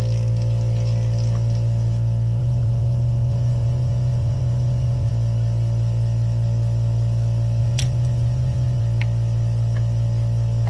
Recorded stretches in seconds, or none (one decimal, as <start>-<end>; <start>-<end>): 0.0-2.4; 5.1-7.6; 8.8-10.7